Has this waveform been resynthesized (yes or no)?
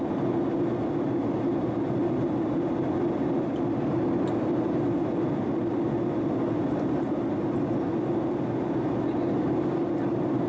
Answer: no